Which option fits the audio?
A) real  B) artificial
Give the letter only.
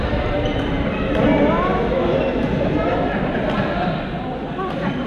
A